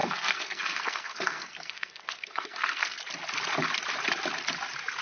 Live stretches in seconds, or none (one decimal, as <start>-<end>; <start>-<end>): 3.0-5.0